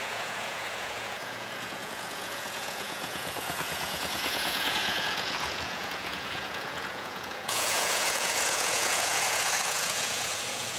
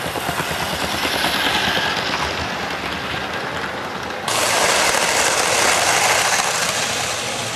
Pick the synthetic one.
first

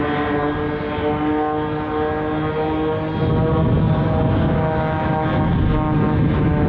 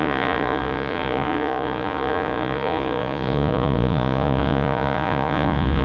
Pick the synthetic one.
second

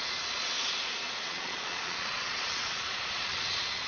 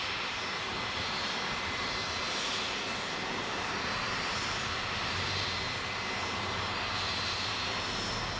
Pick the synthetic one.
first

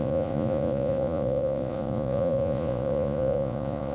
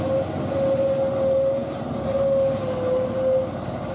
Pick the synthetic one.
first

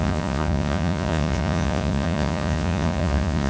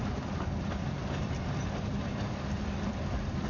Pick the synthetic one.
first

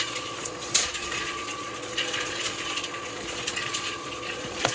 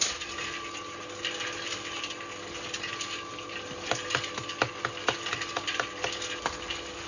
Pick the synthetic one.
first